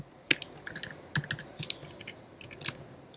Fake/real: real